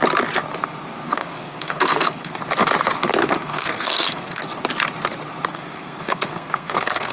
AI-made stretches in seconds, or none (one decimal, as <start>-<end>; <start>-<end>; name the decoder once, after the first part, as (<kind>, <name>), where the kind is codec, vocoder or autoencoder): 1.1-2.4 (codec, SNAC); 3.2-4.4; 5.5-7.1